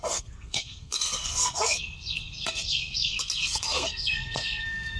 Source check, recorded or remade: remade